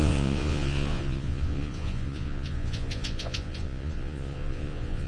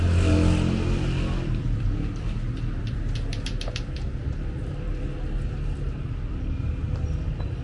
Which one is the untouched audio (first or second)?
second